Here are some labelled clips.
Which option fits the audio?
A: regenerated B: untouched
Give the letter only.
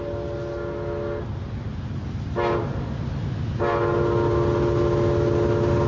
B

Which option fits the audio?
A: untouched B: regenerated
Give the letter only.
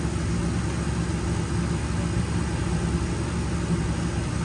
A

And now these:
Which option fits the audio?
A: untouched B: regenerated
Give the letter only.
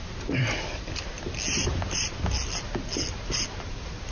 A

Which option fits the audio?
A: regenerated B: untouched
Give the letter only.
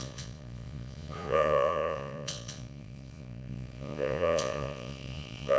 A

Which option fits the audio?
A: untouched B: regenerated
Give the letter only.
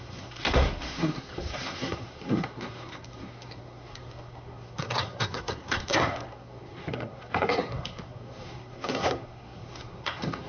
B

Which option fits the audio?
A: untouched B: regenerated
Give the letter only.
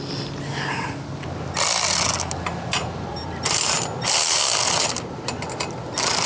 A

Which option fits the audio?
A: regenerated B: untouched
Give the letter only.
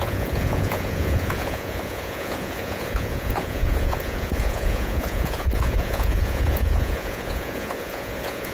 A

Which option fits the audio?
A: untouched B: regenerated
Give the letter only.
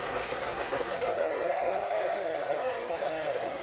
B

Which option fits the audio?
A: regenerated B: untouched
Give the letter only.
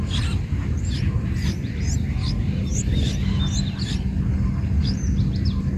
B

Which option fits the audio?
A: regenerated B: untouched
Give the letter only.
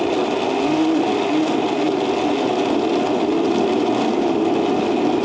B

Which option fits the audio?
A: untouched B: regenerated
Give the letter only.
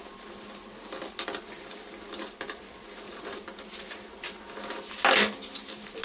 A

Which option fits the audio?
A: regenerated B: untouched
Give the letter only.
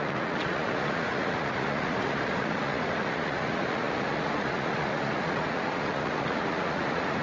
A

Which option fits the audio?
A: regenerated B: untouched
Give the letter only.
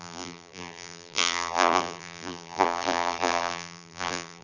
A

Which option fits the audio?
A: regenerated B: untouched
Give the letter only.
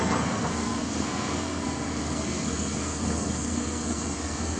A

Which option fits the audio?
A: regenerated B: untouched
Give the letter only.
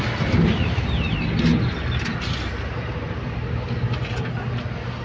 B